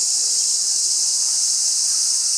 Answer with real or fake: fake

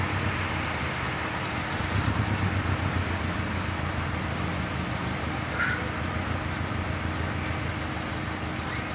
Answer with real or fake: real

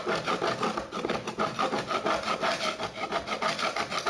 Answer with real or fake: real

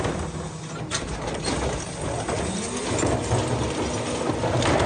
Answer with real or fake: real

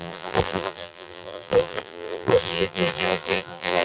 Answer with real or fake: fake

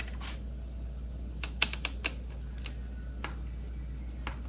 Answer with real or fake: real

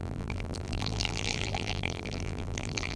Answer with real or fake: fake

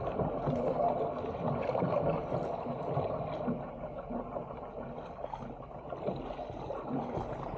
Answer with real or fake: real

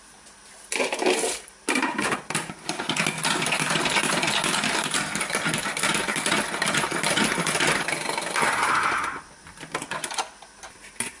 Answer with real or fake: real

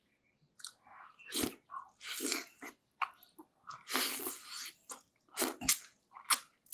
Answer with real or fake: real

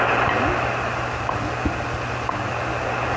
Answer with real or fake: fake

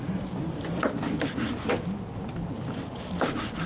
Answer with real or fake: real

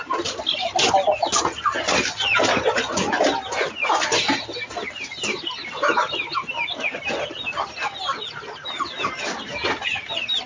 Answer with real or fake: real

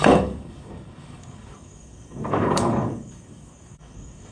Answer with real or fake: fake